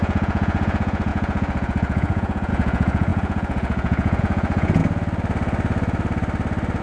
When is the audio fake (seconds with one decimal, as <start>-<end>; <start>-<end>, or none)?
0.0-4.8

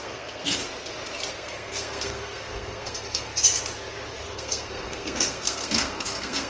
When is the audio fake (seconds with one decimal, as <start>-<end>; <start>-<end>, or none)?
0.0-0.6; 1.3-3.3; 4.3-6.5

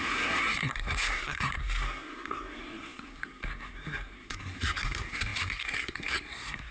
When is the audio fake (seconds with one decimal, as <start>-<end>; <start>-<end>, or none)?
0.0-6.7

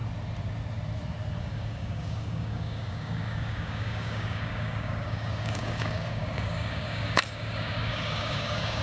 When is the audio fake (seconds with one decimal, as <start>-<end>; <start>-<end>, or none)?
1.4-8.8

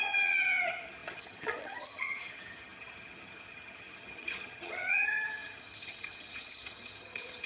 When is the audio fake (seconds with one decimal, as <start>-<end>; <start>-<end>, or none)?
0.0-7.5